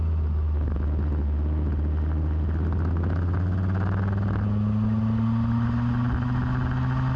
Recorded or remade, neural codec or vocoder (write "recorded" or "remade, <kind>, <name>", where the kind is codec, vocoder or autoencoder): recorded